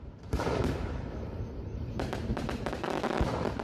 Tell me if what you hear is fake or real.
fake